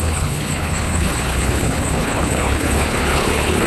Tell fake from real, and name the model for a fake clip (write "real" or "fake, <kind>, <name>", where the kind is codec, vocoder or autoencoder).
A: fake, codec, HILCodec